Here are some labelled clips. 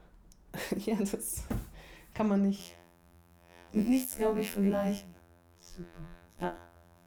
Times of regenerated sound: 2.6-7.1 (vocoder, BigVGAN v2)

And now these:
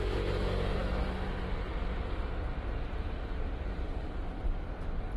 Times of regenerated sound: 0.0-0.8 (vocoder, BigVGAN v2); 1.7-5.2